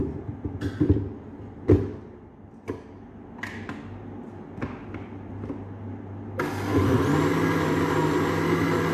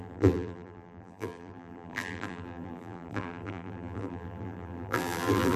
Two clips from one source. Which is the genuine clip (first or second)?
first